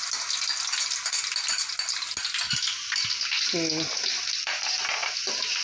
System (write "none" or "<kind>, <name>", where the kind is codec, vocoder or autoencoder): none